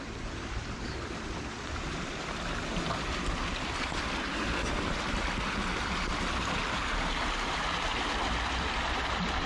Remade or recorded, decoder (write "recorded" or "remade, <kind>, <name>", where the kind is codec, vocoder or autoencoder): recorded